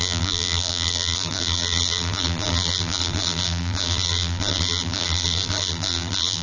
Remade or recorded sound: remade